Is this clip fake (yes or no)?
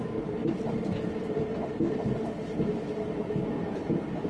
yes